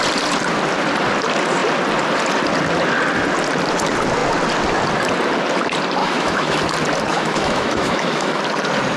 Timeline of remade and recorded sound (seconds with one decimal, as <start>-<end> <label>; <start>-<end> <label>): 0.0-6.0 recorded; 6.0-6.6 remade; 6.6-7.1 recorded; 7.1-8.4 remade; 8.4-9.0 recorded